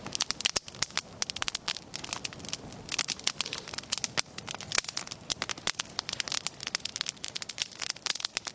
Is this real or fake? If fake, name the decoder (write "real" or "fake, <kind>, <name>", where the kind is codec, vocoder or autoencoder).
real